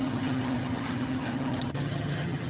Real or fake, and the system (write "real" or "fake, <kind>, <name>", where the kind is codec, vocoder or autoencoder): fake, vocoder, HiFi-GAN